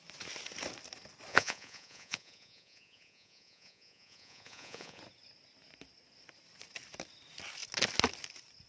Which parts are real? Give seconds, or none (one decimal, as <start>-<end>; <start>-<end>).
0.0-1.3; 5.0-8.7